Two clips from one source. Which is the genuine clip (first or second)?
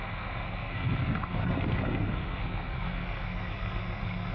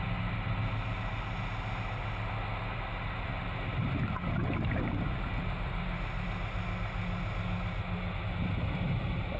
second